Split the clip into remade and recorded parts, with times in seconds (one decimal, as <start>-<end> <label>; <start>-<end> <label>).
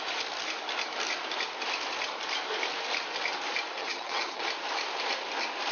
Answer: 0.0-3.8 recorded; 3.8-4.4 remade; 4.4-5.7 recorded